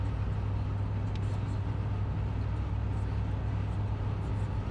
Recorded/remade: recorded